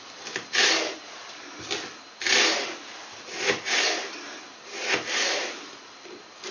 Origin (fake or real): real